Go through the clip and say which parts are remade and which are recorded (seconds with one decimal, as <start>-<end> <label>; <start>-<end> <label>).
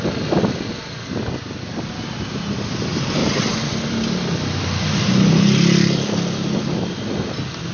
0.0-7.7 recorded